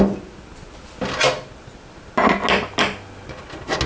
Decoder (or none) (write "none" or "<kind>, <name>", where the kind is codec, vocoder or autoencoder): none